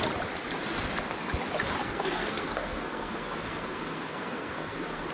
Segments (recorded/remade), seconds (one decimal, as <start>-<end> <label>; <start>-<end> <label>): 0.0-1.8 recorded; 1.8-5.1 remade